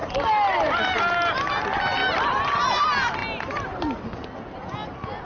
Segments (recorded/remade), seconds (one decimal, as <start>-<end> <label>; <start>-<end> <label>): 0.0-2.0 recorded; 2.0-2.8 remade; 2.8-5.2 recorded

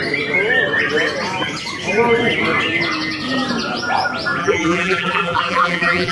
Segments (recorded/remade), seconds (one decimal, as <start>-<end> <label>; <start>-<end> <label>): 0.0-4.4 recorded; 4.4-6.1 remade